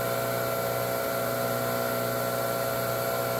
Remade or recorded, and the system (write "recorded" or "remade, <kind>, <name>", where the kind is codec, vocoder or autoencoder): recorded